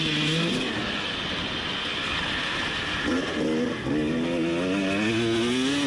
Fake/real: real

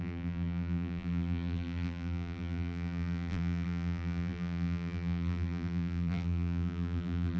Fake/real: fake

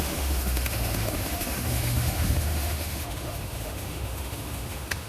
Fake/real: fake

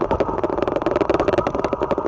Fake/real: real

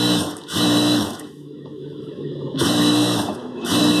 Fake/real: fake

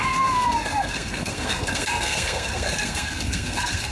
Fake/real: fake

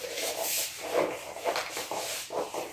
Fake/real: fake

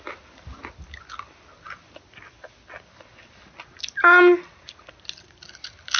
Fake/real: real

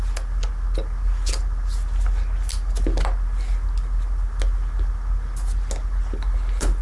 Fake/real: real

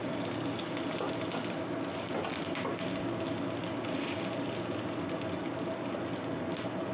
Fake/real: real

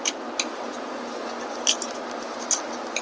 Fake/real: real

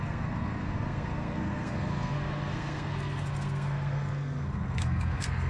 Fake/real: fake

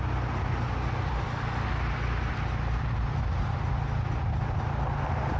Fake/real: real